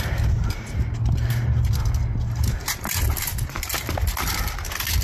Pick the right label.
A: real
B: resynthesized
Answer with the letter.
A